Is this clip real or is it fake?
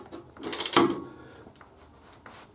real